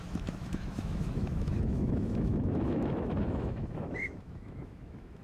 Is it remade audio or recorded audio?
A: remade